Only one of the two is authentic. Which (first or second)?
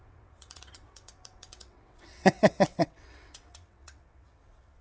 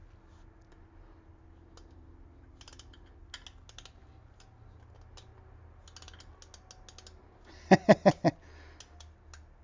second